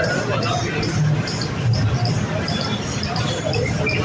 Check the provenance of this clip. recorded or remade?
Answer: remade